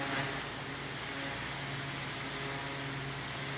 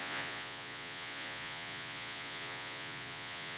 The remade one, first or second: second